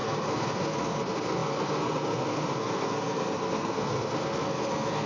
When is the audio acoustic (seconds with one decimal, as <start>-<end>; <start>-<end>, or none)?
none